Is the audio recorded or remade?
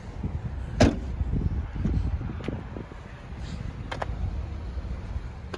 recorded